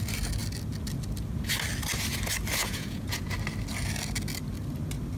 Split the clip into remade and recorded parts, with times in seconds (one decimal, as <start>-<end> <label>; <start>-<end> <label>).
0.0-2.6 recorded; 2.6-3.3 remade; 3.3-5.2 recorded